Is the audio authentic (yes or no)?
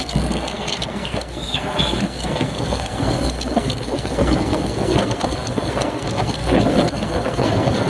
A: no